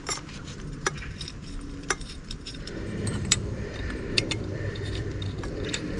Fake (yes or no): yes